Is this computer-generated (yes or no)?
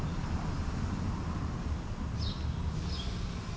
no